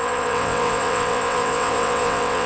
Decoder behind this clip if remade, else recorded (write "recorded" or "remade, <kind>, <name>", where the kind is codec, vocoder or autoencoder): remade, vocoder, WaveNeXt